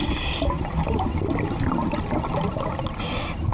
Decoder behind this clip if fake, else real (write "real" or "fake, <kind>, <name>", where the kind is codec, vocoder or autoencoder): real